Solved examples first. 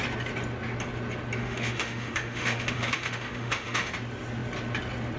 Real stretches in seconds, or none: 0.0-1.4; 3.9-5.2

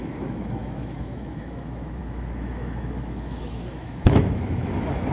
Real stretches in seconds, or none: none